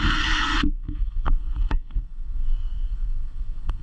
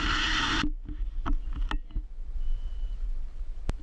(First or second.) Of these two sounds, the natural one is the second